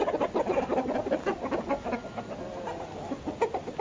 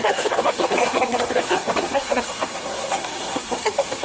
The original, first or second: first